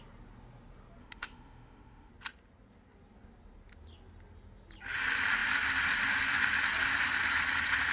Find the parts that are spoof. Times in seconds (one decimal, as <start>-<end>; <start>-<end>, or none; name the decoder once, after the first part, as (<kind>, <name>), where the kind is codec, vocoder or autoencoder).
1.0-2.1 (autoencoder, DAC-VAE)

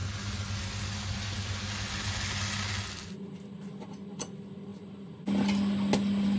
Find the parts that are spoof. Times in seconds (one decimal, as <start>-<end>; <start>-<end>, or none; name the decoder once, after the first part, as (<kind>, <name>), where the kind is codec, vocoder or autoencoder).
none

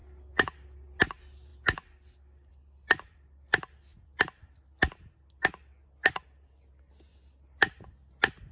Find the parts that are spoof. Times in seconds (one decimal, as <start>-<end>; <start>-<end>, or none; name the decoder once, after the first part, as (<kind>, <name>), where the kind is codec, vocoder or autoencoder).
none

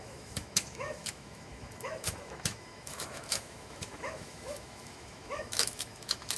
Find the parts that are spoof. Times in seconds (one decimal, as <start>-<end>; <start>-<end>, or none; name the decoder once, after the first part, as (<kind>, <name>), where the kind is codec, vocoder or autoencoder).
0.0-6.4 (autoencoder, DAC-VAE)